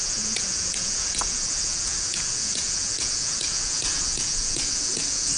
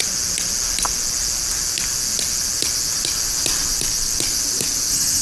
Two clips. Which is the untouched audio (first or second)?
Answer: second